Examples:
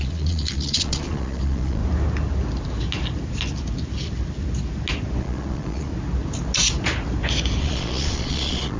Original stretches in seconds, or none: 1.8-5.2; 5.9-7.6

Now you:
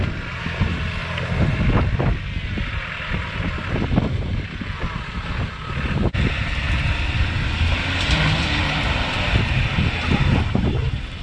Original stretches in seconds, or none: 0.0-1.0; 1.8-11.2